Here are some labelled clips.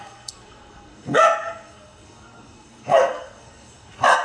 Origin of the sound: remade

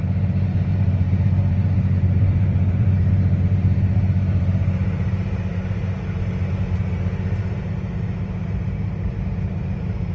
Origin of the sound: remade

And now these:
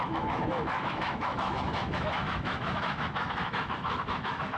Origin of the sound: remade